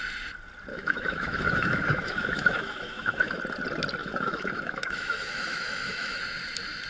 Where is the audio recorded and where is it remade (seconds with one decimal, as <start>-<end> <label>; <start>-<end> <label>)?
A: 0.0-0.7 recorded; 0.7-3.4 remade; 3.4-4.0 recorded; 4.0-6.2 remade; 6.2-6.9 recorded